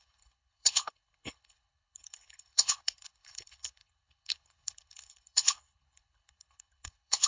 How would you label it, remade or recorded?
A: remade